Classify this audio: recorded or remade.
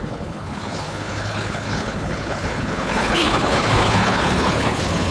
remade